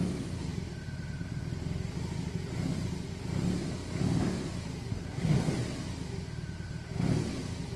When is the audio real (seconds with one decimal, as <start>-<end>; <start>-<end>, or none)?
0.0-4.9; 5.5-7.8